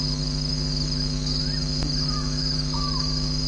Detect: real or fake real